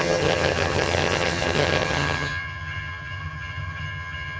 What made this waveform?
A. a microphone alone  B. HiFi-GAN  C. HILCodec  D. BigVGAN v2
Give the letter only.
B